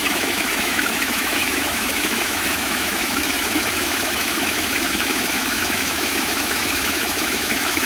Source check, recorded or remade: remade